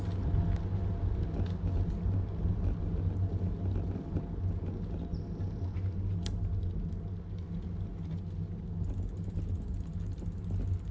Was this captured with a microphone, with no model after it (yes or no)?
yes